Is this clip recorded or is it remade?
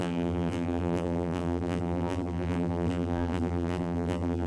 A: remade